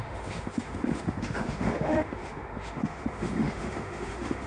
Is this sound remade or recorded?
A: remade